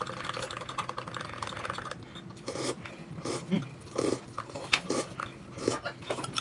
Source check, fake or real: real